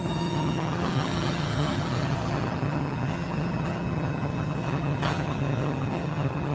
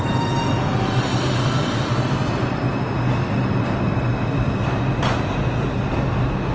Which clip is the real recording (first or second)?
second